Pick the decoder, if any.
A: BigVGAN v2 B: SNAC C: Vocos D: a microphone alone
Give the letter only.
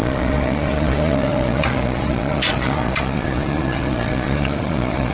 C